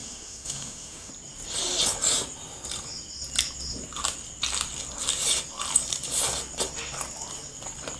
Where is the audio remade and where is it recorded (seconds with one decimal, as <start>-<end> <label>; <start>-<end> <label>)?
0.0-1.1 remade; 1.1-8.0 recorded

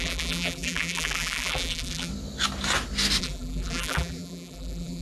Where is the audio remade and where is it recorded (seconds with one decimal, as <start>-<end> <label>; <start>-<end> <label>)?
0.0-2.1 remade; 2.1-3.2 recorded; 3.2-5.0 remade

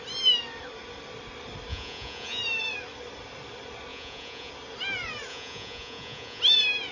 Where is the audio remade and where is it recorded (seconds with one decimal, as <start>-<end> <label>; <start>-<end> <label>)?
0.0-1.7 recorded; 1.7-2.4 remade; 2.4-3.9 recorded; 3.9-4.5 remade; 4.5-5.3 recorded; 5.3-6.4 remade; 6.4-6.9 recorded

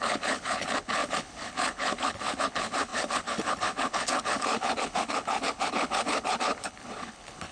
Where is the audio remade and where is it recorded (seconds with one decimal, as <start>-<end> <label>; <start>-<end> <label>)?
0.0-7.5 remade

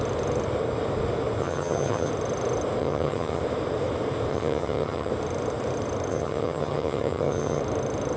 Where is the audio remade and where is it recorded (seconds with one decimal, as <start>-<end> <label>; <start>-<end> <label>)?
0.0-1.4 recorded; 1.4-2.1 remade; 2.1-2.8 recorded; 2.8-3.4 remade; 3.4-4.3 recorded; 4.3-5.1 remade; 5.1-6.1 recorded; 6.1-7.6 remade; 7.6-8.2 recorded